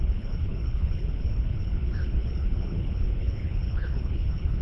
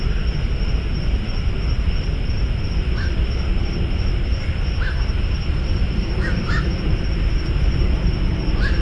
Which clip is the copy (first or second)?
first